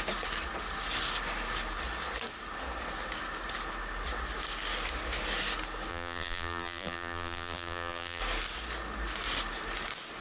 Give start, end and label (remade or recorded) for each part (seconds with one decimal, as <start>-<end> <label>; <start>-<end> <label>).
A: 0.0-5.9 recorded; 5.9-8.2 remade; 8.2-10.2 recorded